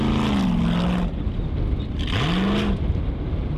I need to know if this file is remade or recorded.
recorded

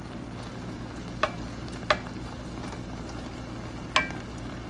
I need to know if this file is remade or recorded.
recorded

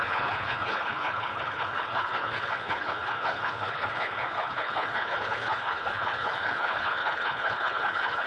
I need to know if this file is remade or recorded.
remade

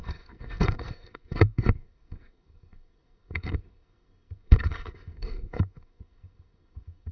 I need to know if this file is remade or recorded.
remade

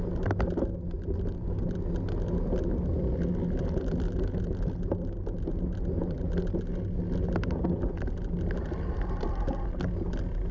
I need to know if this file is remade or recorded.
recorded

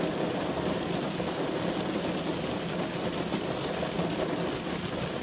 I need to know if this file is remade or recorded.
recorded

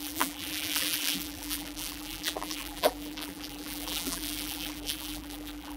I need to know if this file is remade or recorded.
remade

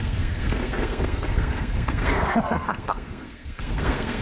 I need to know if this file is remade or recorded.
remade